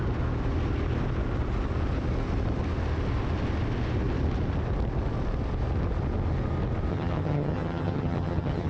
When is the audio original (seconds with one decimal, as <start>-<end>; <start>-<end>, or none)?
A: 0.0-6.9